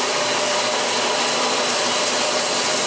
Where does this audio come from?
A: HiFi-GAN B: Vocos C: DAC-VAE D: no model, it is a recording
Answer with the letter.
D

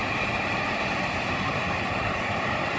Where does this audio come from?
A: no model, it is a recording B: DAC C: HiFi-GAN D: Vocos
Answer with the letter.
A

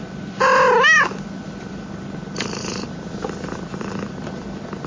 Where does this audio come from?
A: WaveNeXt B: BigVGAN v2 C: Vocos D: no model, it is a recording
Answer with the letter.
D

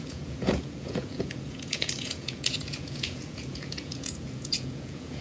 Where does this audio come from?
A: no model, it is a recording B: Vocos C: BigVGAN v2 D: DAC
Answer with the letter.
B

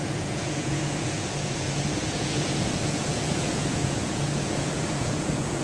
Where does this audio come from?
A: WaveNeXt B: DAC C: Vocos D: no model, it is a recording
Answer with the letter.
C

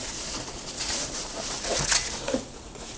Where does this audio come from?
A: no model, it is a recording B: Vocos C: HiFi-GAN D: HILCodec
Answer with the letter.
B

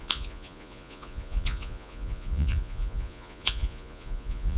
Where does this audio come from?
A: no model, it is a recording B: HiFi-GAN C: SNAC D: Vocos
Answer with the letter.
D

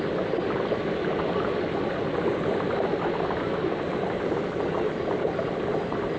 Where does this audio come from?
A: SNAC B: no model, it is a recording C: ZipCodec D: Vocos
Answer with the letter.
B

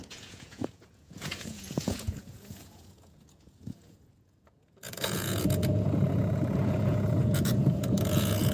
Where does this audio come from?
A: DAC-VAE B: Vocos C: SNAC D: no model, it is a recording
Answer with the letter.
B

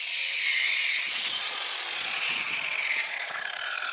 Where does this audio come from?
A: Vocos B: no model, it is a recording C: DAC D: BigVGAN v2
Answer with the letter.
A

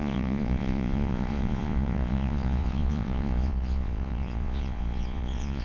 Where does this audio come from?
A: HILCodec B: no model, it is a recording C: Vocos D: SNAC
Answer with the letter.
C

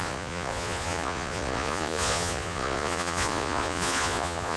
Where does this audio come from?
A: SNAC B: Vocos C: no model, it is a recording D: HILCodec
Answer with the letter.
B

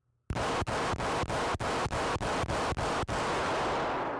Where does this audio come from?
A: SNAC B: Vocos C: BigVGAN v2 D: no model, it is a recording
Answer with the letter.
D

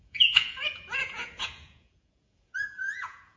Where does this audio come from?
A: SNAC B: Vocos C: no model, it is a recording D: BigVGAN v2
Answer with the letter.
B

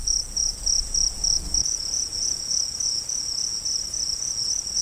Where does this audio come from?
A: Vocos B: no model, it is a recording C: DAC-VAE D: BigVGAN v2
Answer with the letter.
A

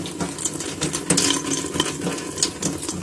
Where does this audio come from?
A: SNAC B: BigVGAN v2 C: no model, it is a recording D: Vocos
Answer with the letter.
C